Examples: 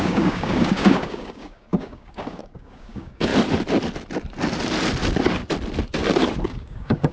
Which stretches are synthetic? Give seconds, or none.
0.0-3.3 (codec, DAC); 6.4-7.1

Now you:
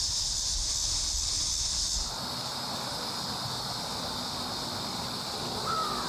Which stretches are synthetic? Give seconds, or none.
none

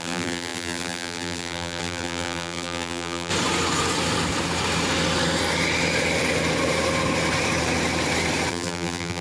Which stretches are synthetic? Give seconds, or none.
0.0-3.3 (vocoder, BigVGAN v2); 8.5-9.2

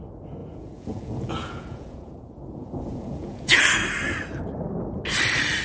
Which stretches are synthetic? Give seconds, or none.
0.4-3.6 (vocoder, Vocos)